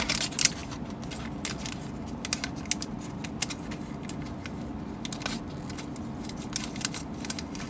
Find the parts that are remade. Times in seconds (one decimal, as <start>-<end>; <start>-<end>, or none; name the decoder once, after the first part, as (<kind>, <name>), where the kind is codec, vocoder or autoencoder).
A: none